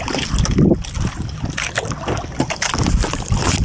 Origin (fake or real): real